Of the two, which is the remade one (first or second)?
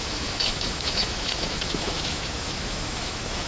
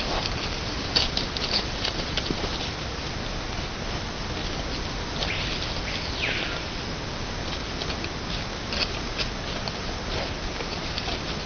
first